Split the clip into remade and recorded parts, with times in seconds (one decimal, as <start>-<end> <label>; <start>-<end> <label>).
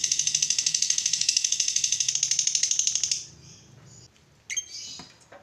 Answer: 0.0-2.1 remade; 2.1-5.4 recorded